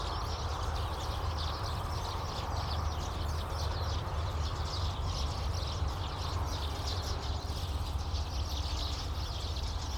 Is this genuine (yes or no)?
yes